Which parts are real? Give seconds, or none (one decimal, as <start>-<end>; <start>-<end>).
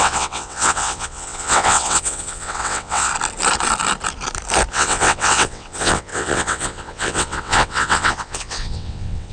3.1-4.7